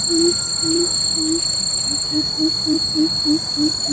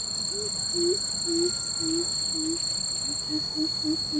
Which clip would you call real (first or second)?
second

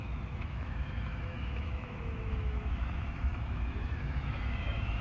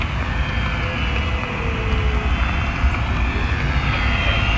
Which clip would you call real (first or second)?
second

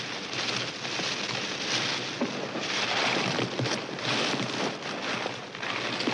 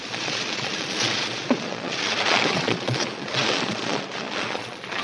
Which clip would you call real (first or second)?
first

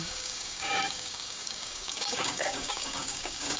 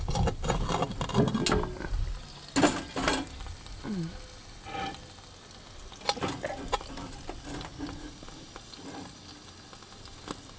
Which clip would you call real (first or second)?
second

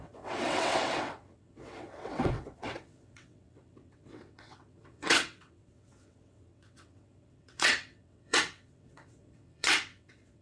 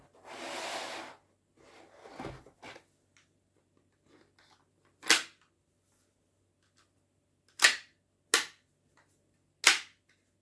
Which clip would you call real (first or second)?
second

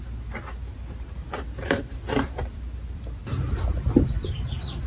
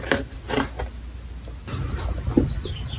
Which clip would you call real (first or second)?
second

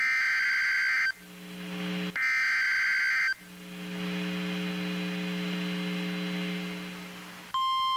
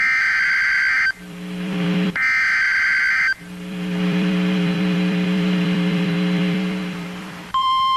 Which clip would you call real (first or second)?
first